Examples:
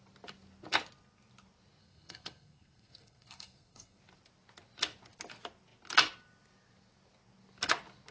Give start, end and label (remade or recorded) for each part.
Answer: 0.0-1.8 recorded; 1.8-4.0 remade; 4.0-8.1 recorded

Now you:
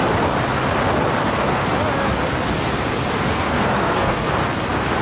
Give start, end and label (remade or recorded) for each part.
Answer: 0.0-1.2 recorded; 1.2-1.7 remade; 1.7-3.3 recorded; 3.3-4.3 remade; 4.3-5.0 recorded